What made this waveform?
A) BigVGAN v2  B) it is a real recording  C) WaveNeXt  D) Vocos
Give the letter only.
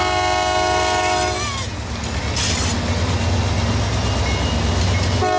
B